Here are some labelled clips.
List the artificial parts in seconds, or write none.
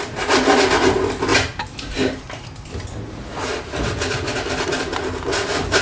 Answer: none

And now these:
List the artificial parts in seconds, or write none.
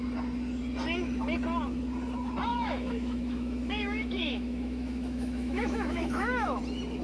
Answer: 2.5-6.6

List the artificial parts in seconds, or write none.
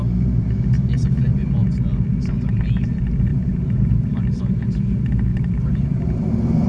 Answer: 3.3-4.4; 5.3-6.7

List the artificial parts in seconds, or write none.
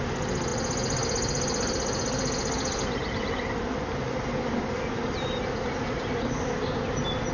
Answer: none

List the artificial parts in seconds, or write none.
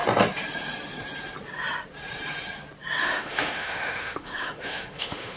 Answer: 3.0-5.4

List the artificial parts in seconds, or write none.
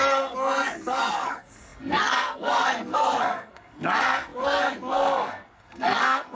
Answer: 0.0-6.3